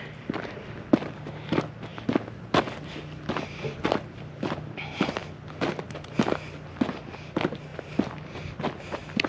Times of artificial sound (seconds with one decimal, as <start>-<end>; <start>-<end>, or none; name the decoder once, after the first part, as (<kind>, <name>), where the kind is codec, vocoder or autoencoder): none